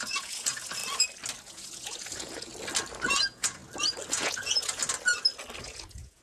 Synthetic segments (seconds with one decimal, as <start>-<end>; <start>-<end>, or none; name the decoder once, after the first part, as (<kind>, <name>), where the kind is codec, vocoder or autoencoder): 0.0-0.8 (vocoder, Vocos); 1.4-2.5; 3.2-3.6; 4.1-4.8; 5.6-6.2